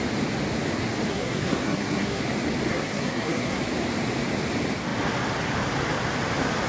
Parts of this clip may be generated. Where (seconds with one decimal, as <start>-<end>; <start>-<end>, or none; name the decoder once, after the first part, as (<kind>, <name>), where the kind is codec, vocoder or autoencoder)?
1.1-2.2 (codec, SNAC); 2.7-3.6